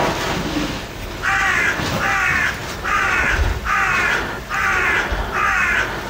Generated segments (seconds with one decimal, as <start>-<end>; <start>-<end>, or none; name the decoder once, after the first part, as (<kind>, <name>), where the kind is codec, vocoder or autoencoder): none